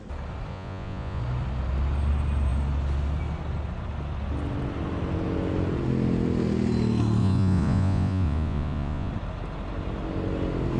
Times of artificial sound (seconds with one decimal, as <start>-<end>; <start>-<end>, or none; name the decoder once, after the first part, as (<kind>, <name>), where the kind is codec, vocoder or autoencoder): 0.5-1.2 (vocoder, Vocos); 7.2-9.1